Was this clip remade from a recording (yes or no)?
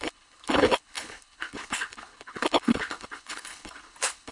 yes